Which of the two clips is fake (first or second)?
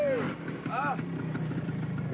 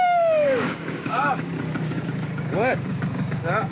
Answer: second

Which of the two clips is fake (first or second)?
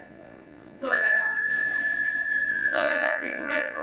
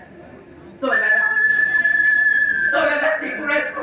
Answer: first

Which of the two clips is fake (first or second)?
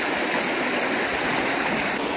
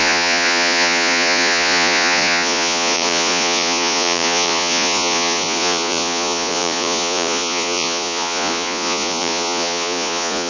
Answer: second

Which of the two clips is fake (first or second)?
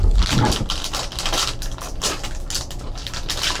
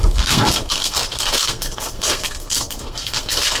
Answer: second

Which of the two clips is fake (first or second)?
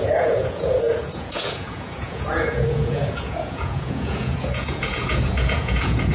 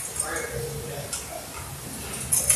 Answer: first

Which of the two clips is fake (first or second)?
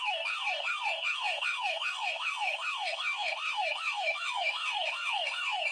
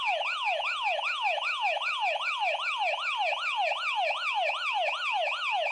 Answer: first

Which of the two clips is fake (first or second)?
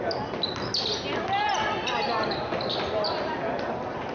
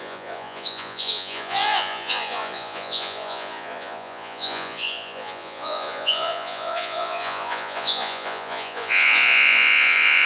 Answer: second